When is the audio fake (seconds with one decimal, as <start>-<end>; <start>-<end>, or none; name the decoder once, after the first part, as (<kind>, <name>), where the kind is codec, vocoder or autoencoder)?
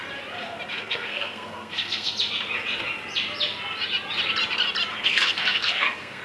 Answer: 0.7-2.1 (codec, SNAC); 4.9-6.2